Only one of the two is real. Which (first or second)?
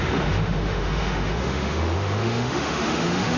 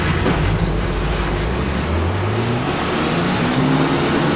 second